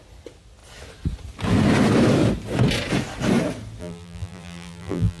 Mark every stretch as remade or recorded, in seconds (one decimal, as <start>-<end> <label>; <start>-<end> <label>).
0.0-3.8 recorded; 3.8-5.2 remade